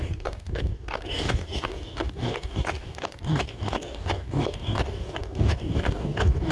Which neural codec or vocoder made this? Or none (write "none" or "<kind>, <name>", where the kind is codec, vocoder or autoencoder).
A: codec, DAC